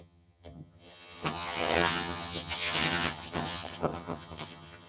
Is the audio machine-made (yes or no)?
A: yes